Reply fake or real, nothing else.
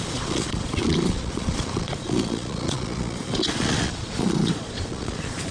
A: fake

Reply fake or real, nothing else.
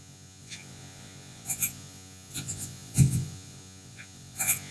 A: fake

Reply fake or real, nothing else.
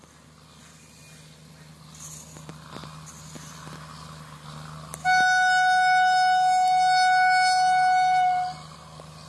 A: real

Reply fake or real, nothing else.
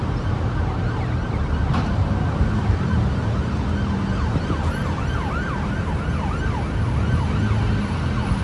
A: real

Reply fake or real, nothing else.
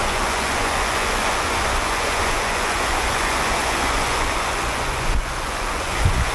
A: fake